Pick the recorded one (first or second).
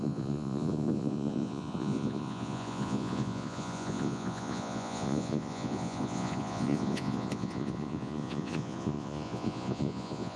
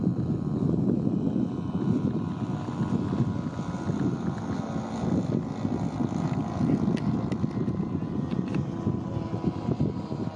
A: second